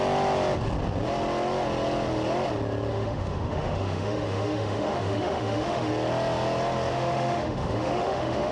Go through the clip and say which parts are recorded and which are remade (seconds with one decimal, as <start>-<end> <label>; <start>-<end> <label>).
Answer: 0.0-2.9 recorded; 2.9-5.9 remade; 5.9-6.9 recorded; 6.9-8.5 remade